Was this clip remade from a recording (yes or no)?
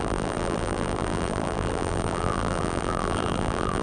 yes